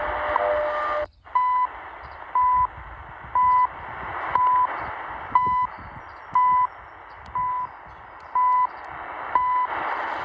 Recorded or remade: recorded